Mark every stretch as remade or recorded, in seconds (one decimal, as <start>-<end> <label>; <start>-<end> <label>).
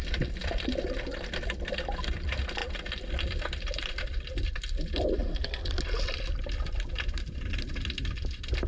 0.0-5.2 remade; 5.2-6.0 recorded; 6.0-8.7 remade